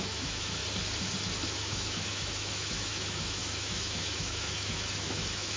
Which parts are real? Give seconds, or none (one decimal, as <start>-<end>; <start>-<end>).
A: 0.6-1.5